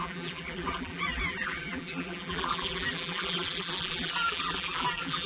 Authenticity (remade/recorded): remade